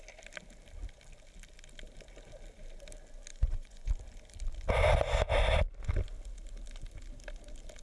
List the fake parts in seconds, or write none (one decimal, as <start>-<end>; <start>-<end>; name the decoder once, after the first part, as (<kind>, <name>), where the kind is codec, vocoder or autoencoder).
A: 3.3-3.9 (vocoder, Vocos)